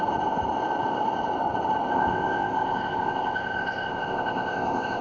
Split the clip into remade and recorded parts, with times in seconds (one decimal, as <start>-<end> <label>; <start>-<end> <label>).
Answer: 0.0-1.9 recorded; 1.9-5.0 remade